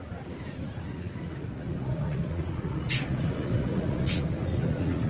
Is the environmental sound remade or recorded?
remade